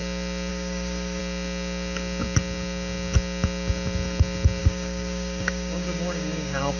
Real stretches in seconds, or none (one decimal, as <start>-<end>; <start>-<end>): 0.0-0.5; 1.2-4.6